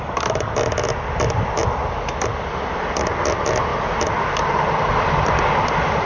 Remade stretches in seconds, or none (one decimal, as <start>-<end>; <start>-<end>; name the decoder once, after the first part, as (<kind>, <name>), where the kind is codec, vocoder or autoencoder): none